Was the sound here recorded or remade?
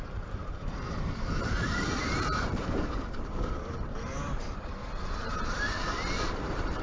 remade